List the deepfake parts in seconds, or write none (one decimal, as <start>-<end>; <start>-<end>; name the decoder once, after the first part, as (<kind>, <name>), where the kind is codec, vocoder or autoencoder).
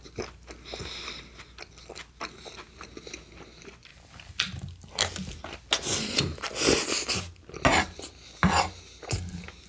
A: none